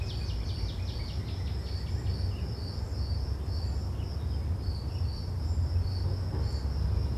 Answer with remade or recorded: recorded